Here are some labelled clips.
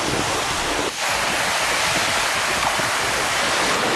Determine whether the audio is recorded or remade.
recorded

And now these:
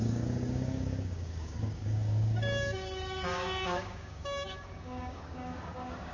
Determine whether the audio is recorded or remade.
remade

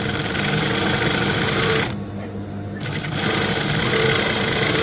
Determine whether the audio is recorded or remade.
recorded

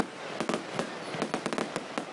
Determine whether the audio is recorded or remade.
recorded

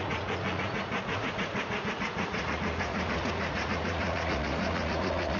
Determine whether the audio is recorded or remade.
remade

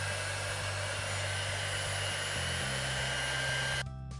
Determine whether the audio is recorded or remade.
recorded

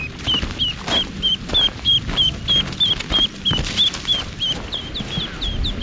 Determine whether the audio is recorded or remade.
recorded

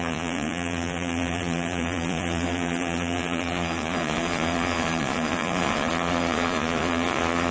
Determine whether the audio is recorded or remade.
remade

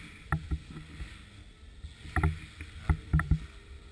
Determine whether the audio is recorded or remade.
recorded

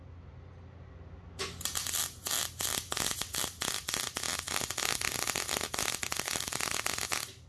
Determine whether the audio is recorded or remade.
recorded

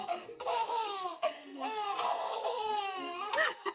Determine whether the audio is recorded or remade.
remade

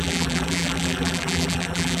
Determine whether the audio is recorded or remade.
remade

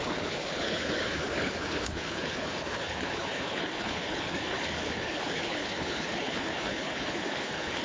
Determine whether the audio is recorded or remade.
remade